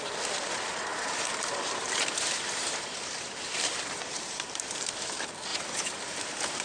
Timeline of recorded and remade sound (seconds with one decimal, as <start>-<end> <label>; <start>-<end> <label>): 0.0-0.9 recorded; 0.9-4.9 remade; 4.9-5.5 recorded; 5.5-6.6 remade